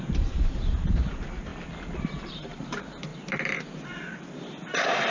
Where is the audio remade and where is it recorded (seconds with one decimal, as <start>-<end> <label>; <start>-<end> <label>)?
0.0-1.5 remade; 1.5-2.3 recorded; 2.3-5.1 remade